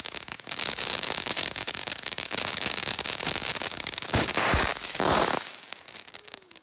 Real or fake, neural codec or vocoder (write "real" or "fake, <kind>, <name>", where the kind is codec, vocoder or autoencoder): fake, codec, DAC